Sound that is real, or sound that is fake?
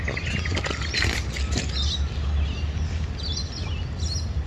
real